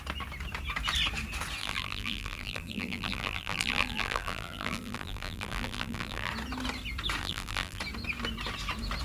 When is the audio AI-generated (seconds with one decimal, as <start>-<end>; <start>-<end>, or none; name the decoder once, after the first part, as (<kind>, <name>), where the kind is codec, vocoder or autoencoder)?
1.6-6.3 (vocoder, BigVGAN v2); 7.2-7.8

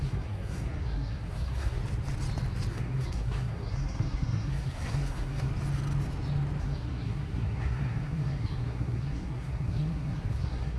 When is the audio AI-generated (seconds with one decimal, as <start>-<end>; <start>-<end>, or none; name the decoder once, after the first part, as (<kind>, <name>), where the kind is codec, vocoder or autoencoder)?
0.0-1.8 (codec, SNAC); 2.7-5.5; 6.6-10.8

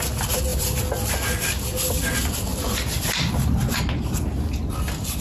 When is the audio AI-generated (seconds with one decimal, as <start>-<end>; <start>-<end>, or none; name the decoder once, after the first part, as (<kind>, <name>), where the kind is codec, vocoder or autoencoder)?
0.5-1.1 (vocoder, BigVGAN v2); 2.5-3.8

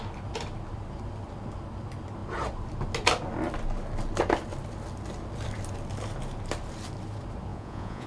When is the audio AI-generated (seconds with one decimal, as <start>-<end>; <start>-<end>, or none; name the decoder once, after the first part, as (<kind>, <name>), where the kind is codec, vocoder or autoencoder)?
7.5-8.1 (vocoder, Vocos)

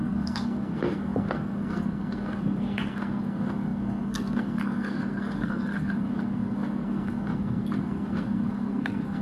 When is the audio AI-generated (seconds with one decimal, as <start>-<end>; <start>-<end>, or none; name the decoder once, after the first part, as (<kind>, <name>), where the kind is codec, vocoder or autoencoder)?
0.0-9.2 (codec, SNAC)

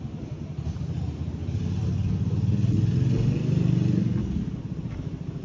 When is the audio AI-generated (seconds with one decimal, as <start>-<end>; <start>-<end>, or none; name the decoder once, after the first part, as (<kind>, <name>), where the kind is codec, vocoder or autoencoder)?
0.0-1.4 (vocoder, BigVGAN v2); 4.6-5.4